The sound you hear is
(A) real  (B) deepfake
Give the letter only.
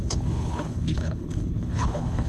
B